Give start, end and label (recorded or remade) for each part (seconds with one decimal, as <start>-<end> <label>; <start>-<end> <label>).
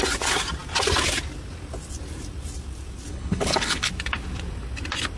0.0-3.1 recorded; 3.1-3.9 remade; 3.9-5.2 recorded